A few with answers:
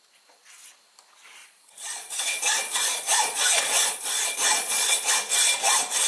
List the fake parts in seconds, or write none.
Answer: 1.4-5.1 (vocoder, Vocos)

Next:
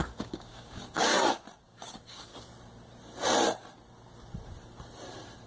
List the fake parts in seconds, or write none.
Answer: 0.0-1.1 (codec, DAC); 1.6-2.3